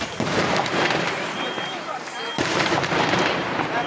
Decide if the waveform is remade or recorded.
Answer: remade